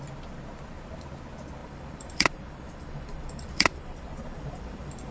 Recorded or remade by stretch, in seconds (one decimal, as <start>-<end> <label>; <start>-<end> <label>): 0.0-1.6 recorded; 1.6-5.1 remade